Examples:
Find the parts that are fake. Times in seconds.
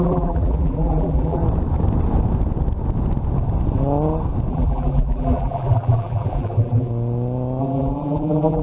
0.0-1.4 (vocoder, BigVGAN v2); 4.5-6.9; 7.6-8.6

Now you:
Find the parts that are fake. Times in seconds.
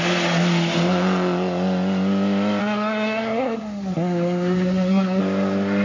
2.6-5.2 (codec, SNAC)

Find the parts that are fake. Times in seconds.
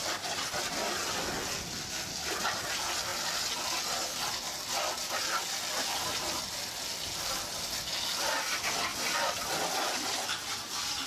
none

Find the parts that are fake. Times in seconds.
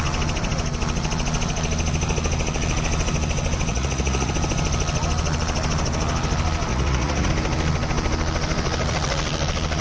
3.7-4.3 (vocoder, Vocos); 6.7-7.3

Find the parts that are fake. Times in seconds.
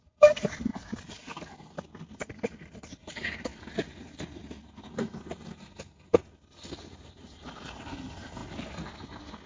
0.0-0.7 (vocoder, BigVGAN v2); 2.2-3.5; 4.0-4.4; 6.8-8.4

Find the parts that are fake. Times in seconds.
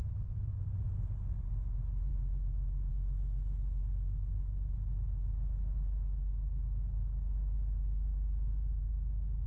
none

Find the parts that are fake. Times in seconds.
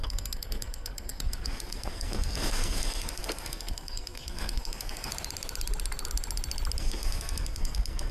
0.0-5.1 (codec, SNAC); 6.8-8.1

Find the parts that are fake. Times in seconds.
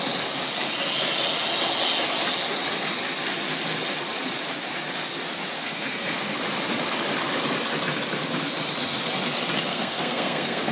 5.6-6.2 (codec, SNAC); 9.7-10.7